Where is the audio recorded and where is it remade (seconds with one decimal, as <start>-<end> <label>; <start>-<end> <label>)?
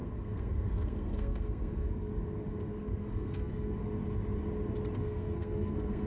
0.0-2.1 remade; 2.1-2.8 recorded; 2.8-3.8 remade; 3.8-5.0 recorded; 5.0-6.1 remade